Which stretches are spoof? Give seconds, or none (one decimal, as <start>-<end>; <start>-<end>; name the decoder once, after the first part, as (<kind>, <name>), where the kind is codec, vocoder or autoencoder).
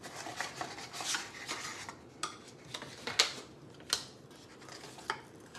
none